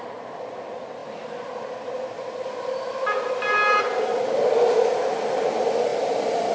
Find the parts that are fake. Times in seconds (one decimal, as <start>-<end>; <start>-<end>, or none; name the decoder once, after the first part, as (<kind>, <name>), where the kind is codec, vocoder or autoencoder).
5.9-6.5 (vocoder, BigVGAN v2)